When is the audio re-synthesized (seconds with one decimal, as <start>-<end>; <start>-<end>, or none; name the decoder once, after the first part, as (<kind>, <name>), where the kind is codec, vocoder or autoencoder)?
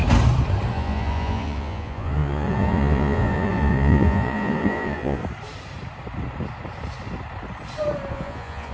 0.7-5.2 (vocoder, Vocos); 8.1-8.7